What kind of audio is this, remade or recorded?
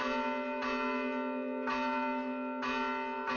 recorded